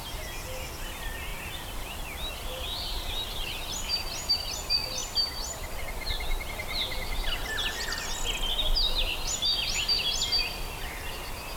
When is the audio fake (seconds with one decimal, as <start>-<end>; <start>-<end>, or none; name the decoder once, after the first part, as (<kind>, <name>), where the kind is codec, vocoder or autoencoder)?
1.3-4.3 (vocoder, BigVGAN v2); 5.0-6.5